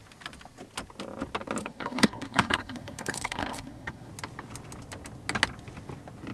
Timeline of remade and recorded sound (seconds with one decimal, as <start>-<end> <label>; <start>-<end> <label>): 0.0-1.6 recorded; 1.6-4.1 remade; 4.1-6.3 recorded